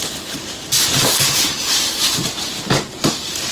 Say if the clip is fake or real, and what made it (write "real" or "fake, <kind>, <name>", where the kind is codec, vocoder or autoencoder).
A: fake, vocoder, BigVGAN v2